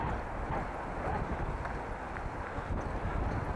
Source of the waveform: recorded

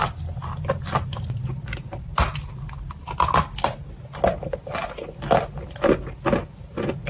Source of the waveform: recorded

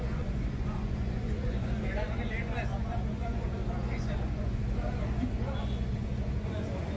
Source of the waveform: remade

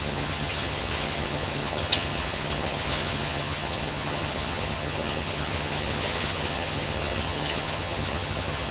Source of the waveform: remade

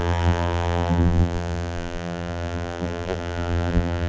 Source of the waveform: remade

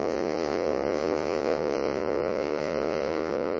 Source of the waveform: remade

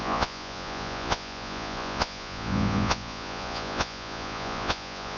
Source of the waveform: remade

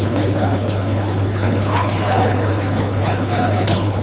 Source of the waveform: remade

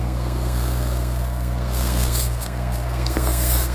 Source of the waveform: remade